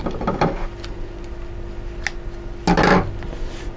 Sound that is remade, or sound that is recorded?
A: recorded